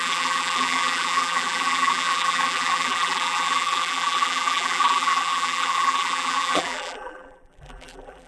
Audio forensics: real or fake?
fake